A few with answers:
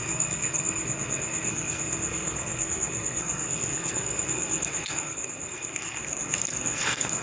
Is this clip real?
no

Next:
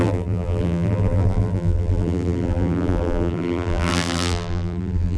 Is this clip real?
no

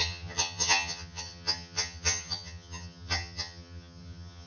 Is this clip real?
no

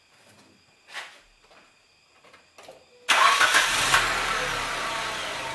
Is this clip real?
yes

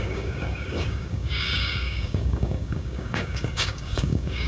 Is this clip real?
no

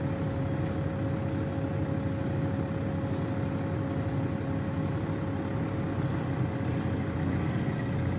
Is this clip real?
yes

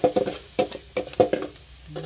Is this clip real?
yes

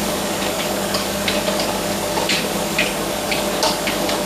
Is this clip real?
no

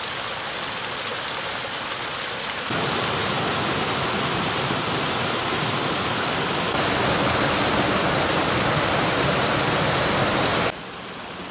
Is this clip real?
yes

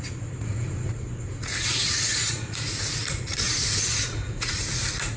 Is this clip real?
no